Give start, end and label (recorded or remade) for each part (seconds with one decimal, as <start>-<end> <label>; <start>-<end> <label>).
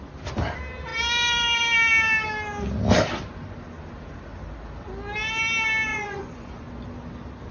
0.0-5.9 recorded; 5.9-6.7 remade; 6.7-7.5 recorded